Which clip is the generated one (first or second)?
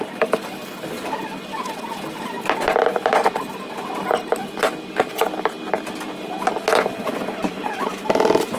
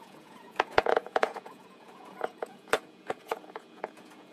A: second